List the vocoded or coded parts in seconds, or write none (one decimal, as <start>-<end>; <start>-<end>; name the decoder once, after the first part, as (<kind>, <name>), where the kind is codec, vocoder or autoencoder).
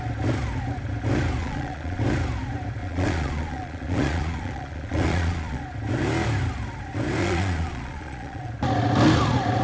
1.4-2.0 (vocoder, Vocos); 2.8-5.6; 7.2-8.5